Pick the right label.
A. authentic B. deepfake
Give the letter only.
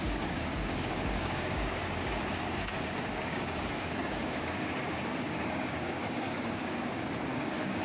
B